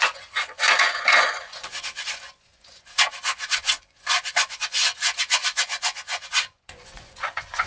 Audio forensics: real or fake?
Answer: fake